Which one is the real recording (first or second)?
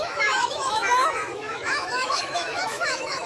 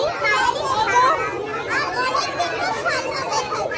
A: second